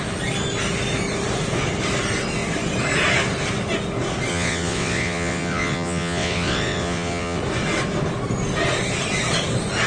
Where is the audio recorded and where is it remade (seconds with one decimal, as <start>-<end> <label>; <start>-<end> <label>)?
0.0-4.3 recorded; 4.3-7.4 remade; 7.4-9.9 recorded

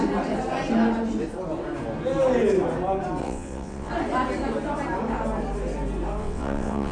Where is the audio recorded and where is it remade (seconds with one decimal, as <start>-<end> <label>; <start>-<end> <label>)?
0.0-3.2 recorded; 3.2-3.9 remade; 3.9-6.2 recorded; 6.2-6.9 remade

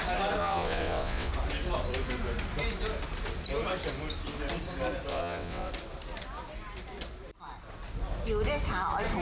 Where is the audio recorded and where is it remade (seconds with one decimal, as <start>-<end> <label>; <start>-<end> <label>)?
0.0-0.4 recorded; 0.4-1.3 remade; 1.3-5.1 recorded; 5.1-5.7 remade; 5.7-9.2 recorded

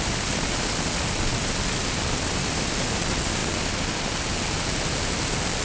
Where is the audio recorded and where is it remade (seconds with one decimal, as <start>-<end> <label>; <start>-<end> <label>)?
0.0-5.6 recorded

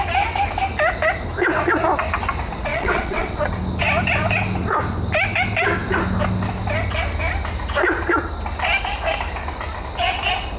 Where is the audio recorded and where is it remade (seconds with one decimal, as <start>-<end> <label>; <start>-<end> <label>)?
0.0-2.7 recorded; 2.7-3.4 remade; 3.4-10.6 recorded